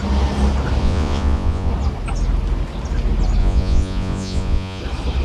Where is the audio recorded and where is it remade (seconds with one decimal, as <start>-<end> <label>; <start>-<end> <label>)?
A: 0.0-0.8 recorded; 0.8-1.7 remade; 1.7-3.4 recorded; 3.4-4.8 remade; 4.8-5.2 recorded